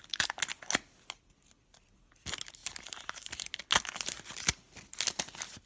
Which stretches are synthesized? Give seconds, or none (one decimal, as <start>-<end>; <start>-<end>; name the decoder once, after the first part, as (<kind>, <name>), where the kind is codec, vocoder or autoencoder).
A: none